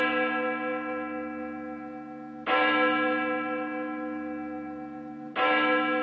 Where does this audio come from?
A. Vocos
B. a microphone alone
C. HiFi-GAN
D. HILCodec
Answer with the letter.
B